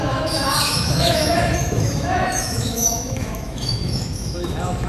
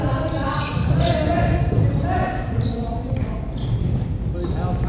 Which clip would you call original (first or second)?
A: second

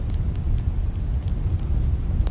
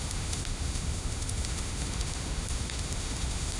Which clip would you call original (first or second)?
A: first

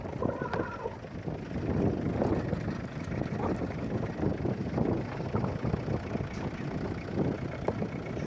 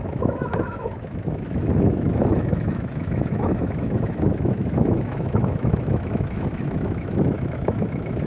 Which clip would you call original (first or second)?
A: first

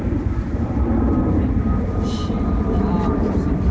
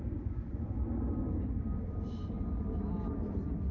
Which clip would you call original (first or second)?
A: second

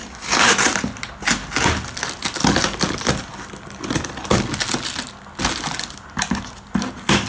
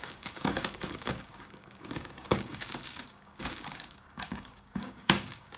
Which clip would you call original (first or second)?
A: first